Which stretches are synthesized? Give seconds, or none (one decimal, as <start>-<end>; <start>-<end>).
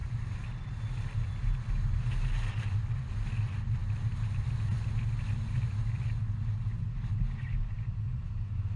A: none